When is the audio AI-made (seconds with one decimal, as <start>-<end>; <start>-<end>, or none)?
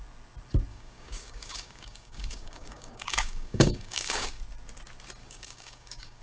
0.7-4.4; 5.2-6.2